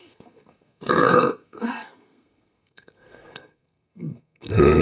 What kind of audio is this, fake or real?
fake